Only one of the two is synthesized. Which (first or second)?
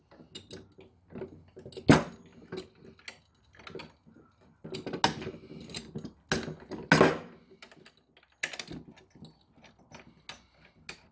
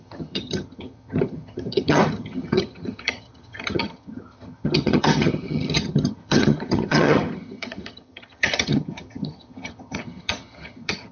second